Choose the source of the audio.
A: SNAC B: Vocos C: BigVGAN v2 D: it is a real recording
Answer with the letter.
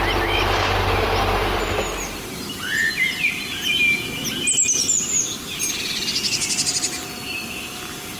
D